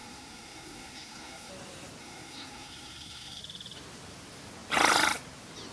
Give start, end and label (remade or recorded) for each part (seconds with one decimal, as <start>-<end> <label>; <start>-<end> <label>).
0.0-1.5 remade; 1.5-2.0 recorded; 2.0-3.4 remade; 3.4-5.7 recorded